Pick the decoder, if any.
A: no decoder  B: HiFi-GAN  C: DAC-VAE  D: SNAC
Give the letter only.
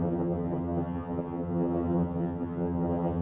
B